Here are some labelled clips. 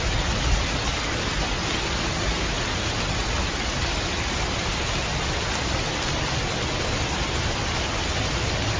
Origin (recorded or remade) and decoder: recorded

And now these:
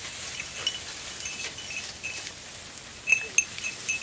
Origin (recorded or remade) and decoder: recorded